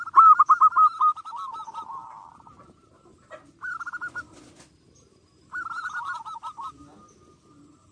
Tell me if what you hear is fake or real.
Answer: real